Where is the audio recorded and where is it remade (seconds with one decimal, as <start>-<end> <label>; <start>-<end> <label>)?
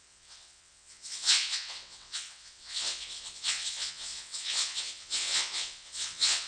0.0-6.5 remade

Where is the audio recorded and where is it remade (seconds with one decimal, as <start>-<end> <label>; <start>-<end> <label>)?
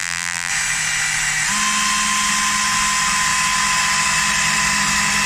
0.0-0.5 remade; 0.5-5.3 recorded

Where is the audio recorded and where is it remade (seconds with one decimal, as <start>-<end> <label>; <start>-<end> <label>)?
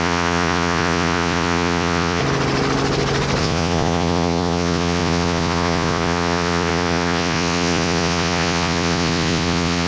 0.0-2.2 remade; 2.2-3.4 recorded; 3.4-9.9 remade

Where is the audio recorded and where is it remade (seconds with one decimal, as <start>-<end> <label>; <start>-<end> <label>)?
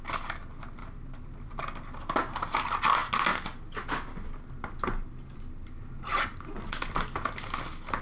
0.0-0.8 recorded; 0.8-1.6 remade; 1.6-8.0 recorded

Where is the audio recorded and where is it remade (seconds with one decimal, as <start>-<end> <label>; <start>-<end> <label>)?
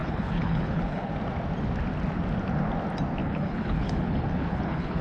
0.0-1.1 remade; 1.1-3.2 recorded; 3.2-5.0 remade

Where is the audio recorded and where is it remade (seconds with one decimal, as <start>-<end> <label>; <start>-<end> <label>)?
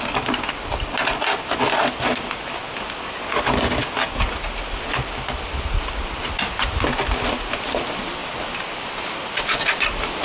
0.0-10.2 recorded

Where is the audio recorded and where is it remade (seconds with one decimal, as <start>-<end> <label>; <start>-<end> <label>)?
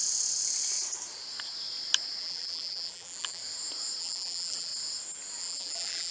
0.0-2.2 recorded; 2.2-3.4 remade; 3.4-4.0 recorded; 4.0-4.7 remade; 4.7-5.4 recorded; 5.4-6.1 remade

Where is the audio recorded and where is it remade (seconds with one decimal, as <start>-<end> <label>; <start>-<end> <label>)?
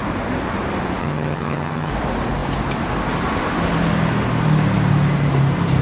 0.0-1.0 recorded; 1.0-1.9 remade; 1.9-5.8 recorded